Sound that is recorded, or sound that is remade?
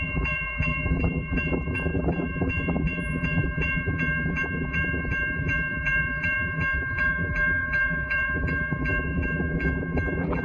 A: remade